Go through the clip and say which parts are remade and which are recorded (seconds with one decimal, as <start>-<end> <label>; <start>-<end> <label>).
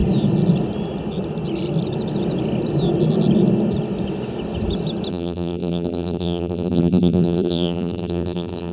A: 0.0-5.1 recorded; 5.1-8.7 remade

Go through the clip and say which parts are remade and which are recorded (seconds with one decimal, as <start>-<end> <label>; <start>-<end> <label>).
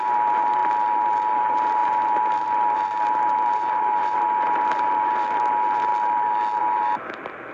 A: 0.0-0.6 remade; 0.6-1.2 recorded; 1.2-5.9 remade; 5.9-6.6 recorded; 6.6-7.5 remade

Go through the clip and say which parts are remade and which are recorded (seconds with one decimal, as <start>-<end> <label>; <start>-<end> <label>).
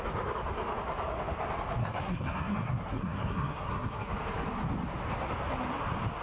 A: 0.0-1.8 recorded; 1.8-4.1 remade; 4.1-6.2 recorded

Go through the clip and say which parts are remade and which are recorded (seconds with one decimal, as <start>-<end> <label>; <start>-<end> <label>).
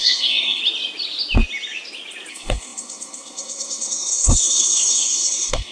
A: 0.0-0.6 remade; 0.6-2.3 recorded; 2.3-5.7 remade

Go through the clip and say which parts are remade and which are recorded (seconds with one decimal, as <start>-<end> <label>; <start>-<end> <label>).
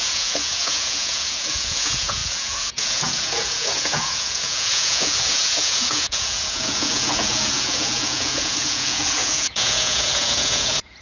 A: 0.0-11.0 remade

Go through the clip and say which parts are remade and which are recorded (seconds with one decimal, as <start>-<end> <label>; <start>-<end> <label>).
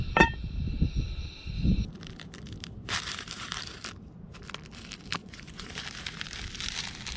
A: 0.0-5.2 recorded; 5.2-5.8 remade; 5.8-7.2 recorded